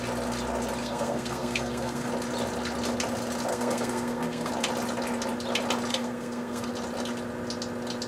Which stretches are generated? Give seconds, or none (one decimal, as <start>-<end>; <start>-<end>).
0.8-2.1; 3.5-4.5; 5.9-6.7